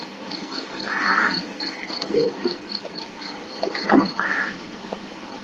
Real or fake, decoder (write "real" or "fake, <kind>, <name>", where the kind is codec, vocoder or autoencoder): fake, codec, SNAC